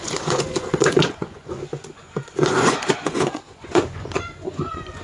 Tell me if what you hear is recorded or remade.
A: remade